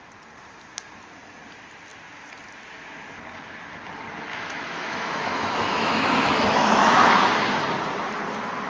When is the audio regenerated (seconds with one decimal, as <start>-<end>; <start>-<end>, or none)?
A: 4.3-7.3